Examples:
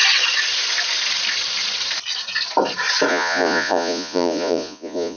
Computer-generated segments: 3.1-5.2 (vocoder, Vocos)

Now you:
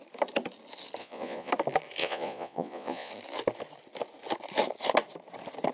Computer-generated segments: 1.0-1.5 (vocoder, Vocos); 2.0-3.1

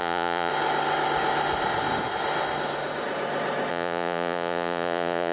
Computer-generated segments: 0.0-0.5 (vocoder, Vocos); 3.7-5.3